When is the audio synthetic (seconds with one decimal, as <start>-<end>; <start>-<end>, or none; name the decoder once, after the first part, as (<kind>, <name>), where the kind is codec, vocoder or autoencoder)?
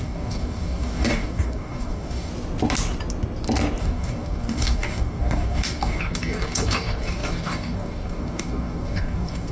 0.0-2.3 (codec, DAC); 3.8-9.5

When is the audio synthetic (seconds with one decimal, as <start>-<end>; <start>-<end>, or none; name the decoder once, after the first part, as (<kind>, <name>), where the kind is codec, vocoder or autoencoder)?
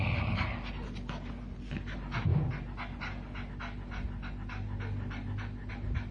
none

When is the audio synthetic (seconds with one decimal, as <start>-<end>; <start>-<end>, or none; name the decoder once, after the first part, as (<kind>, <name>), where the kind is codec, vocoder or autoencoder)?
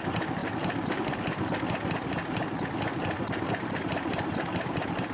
none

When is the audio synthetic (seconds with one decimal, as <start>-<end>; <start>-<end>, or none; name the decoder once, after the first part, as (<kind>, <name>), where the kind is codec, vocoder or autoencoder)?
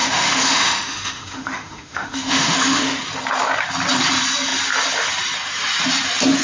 0.0-3.0 (autoencoder, DAC-VAE)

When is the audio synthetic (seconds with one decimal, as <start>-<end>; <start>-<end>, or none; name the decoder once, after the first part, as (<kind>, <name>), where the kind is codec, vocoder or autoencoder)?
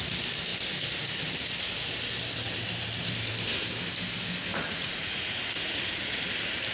4.5-6.2 (vocoder, Vocos)